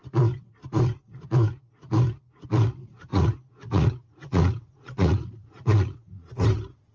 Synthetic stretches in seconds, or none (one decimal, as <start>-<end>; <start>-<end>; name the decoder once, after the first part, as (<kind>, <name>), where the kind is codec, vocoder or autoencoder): 3.1-6.3 (vocoder, Vocos)